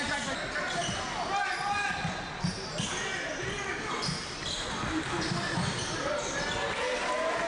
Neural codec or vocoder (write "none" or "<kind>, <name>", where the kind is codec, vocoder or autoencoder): none